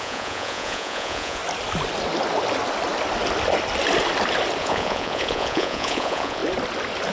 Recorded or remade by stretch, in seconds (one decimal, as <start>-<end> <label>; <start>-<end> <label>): 0.0-1.4 remade; 1.4-4.6 recorded; 4.6-6.4 remade; 6.4-7.1 recorded